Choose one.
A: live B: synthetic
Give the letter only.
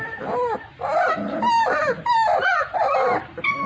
A